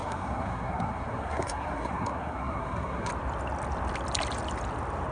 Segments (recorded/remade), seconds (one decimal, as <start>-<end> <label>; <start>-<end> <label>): 0.0-3.1 remade; 3.1-5.1 recorded